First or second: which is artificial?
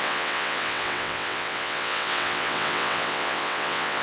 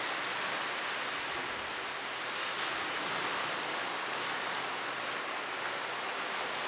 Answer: first